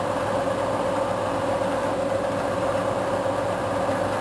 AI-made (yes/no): no